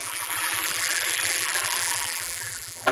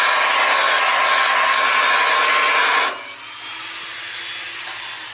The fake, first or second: first